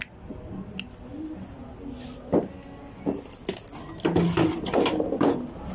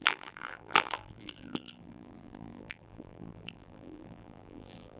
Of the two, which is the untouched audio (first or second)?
first